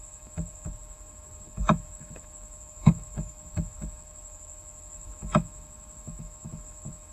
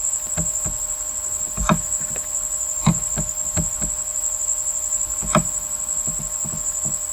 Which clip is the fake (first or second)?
first